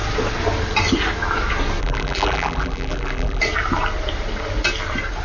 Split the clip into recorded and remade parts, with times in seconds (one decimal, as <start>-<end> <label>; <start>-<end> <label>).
0.0-1.8 recorded; 1.8-3.4 remade; 3.4-5.2 recorded